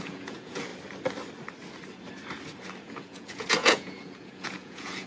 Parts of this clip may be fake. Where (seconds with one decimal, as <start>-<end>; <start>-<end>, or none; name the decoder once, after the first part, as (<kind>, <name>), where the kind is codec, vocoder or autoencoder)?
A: 0.0-0.7 (vocoder, Vocos); 2.8-5.1